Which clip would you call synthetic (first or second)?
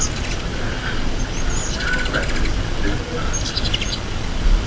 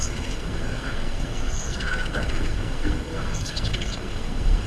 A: second